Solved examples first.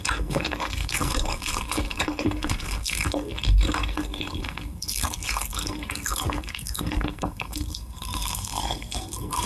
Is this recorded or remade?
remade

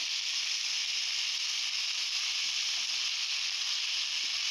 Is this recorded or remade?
recorded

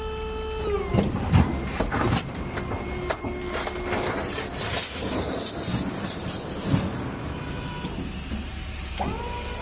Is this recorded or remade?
recorded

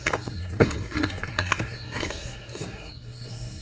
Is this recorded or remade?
remade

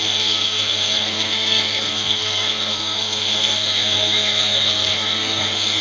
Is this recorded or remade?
remade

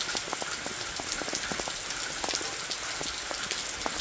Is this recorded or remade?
recorded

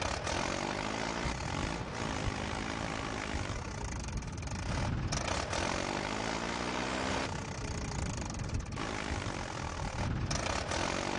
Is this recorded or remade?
recorded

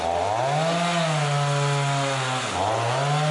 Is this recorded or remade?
recorded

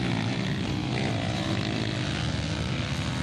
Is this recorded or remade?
recorded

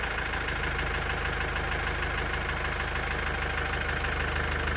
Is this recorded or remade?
recorded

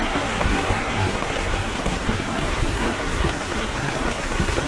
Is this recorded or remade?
remade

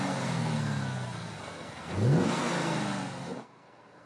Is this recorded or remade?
remade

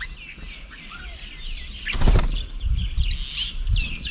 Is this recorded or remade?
recorded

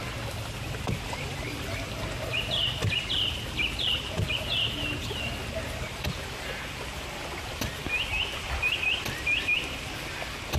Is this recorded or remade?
recorded